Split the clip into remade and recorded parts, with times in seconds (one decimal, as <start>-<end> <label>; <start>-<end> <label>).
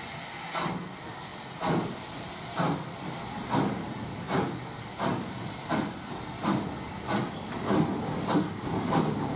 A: 0.0-9.4 recorded